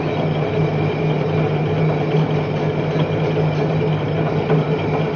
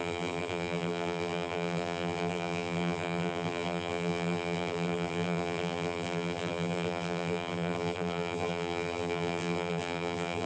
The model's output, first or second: second